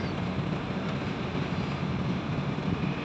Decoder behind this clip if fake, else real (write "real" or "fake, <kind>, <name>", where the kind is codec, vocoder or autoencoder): fake, vocoder, BigVGAN v2